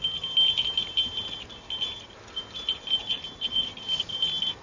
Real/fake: real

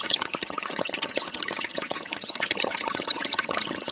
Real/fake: fake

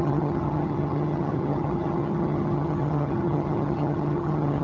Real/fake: fake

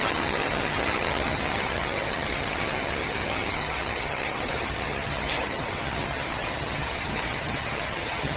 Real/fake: fake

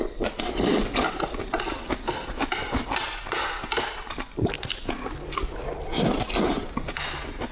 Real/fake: real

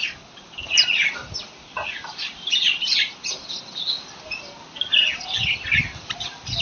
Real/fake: real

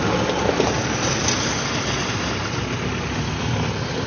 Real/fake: real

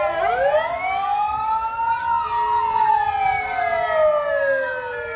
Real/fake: real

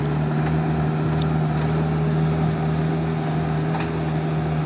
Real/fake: real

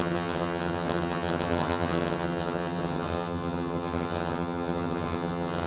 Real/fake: fake